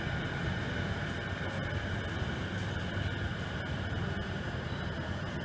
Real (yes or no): yes